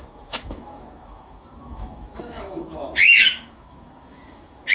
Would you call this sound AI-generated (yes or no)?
yes